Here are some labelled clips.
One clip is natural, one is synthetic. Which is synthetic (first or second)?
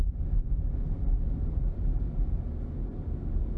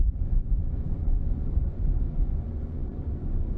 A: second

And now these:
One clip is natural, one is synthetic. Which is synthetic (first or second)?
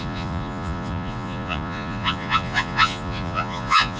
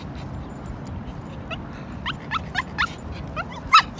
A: first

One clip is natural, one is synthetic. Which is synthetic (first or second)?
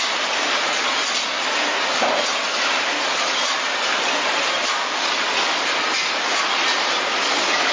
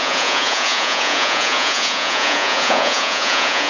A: second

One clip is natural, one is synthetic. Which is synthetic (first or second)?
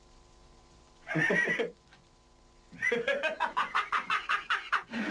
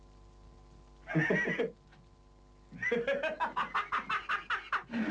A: first